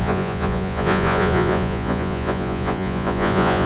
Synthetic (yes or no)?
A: yes